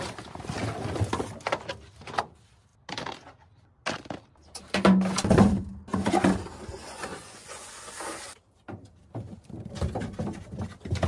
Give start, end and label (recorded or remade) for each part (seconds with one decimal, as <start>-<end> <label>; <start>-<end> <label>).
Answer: 0.0-6.8 recorded; 6.8-7.9 remade; 7.9-11.1 recorded

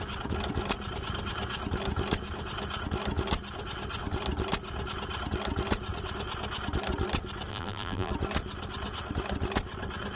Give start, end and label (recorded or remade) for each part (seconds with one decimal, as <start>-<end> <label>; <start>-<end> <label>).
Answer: 0.0-7.5 recorded; 7.5-8.1 remade; 8.1-10.2 recorded

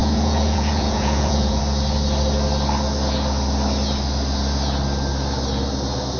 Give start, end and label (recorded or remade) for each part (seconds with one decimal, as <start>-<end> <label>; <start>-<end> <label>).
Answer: 0.0-1.6 remade; 1.6-6.2 recorded

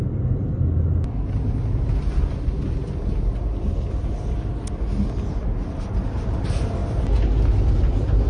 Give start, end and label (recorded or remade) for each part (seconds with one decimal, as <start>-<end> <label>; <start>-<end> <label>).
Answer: 0.0-8.3 recorded

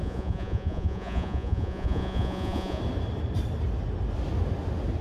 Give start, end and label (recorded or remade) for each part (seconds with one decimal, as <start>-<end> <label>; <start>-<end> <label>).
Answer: 0.0-2.8 remade; 2.8-5.0 recorded

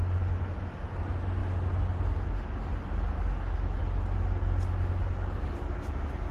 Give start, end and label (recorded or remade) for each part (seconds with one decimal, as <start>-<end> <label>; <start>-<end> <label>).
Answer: 0.0-6.3 recorded